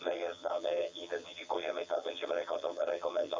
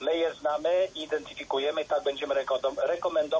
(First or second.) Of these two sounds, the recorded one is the second